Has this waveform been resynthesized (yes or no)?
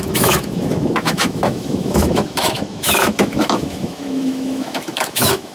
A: yes